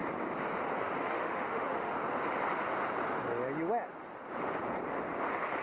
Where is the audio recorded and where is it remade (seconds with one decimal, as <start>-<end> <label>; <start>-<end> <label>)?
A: 0.0-1.1 recorded; 1.1-1.9 remade; 1.9-5.6 recorded